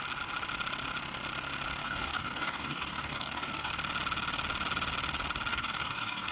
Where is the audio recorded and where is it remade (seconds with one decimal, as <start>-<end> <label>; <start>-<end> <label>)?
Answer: 0.0-1.8 recorded; 1.8-3.7 remade; 3.7-5.5 recorded; 5.5-6.3 remade